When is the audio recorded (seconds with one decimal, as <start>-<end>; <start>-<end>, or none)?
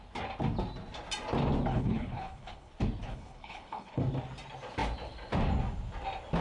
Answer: 0.0-1.7; 2.7-3.1; 4.0-6.4